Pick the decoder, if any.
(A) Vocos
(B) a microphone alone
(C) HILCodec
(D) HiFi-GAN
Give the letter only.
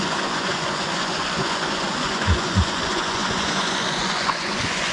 A